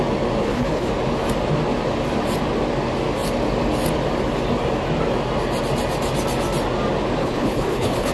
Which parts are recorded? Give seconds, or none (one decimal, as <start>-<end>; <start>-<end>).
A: 0.0-0.4; 0.9-7.2

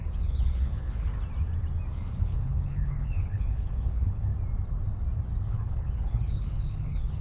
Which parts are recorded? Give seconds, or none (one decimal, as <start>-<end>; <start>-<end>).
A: 1.1-1.9; 4.3-5.4

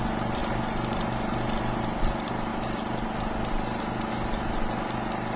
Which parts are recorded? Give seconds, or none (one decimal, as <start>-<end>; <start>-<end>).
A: 0.0-5.4

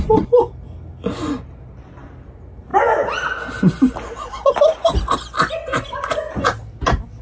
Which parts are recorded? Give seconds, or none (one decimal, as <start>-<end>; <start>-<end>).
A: 0.0-7.2